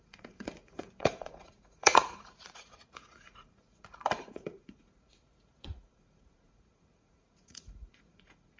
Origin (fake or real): fake